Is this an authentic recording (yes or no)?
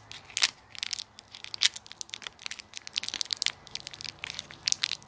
yes